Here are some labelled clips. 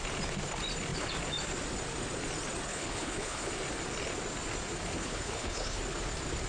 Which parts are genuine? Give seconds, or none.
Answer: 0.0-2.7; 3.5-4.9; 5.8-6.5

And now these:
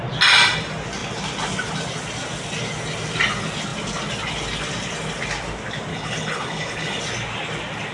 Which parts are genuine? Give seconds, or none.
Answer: 0.0-5.9; 7.0-7.9

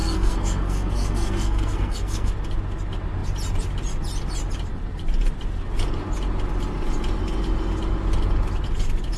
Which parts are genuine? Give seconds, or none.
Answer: 2.3-9.2

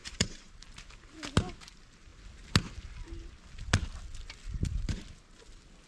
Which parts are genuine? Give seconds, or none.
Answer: 0.5-5.9

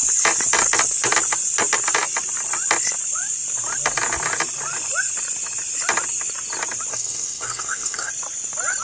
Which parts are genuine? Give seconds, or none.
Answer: 0.0-6.9; 8.1-8.8

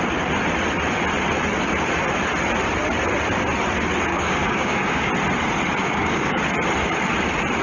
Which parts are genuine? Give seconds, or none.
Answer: 0.0-4.1; 5.1-5.8; 6.4-7.6

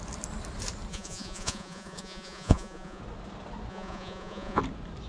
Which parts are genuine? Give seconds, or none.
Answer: 0.0-0.9; 3.0-3.7; 4.6-5.1